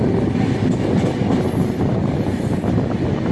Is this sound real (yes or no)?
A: yes